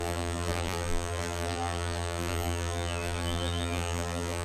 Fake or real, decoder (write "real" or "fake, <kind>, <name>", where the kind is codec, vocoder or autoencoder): fake, vocoder, BigVGAN v2